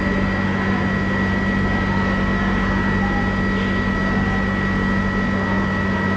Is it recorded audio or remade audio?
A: recorded